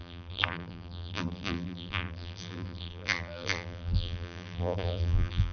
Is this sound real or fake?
fake